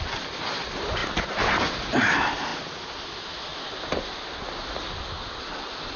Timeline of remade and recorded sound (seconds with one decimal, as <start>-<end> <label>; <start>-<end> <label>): 0.0-6.0 recorded